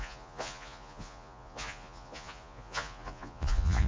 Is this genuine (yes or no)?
no